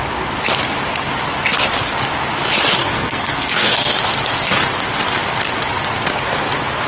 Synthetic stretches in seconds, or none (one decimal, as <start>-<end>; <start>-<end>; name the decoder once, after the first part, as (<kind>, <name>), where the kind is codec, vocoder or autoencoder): 2.8-3.9 (codec, SNAC)